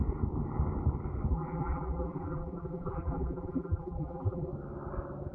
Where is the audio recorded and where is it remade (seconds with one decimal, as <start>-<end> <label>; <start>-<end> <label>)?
0.0-1.3 recorded; 1.3-4.5 remade; 4.5-5.3 recorded